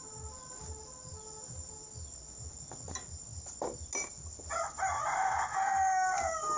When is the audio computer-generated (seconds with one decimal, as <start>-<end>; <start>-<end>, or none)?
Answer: none